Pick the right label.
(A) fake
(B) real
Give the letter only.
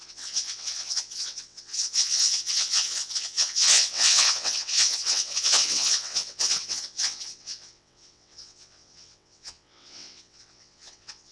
A